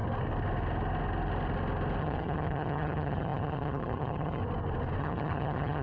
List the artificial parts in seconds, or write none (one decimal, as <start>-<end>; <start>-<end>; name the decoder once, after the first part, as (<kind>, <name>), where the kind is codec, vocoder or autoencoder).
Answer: 2.0-4.4 (vocoder, HiFi-GAN); 5.0-5.8